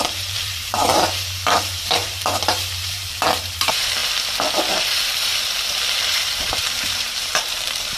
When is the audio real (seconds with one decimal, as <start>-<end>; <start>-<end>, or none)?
4.0-4.6; 5.3-6.0